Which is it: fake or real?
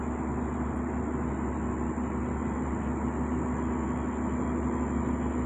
real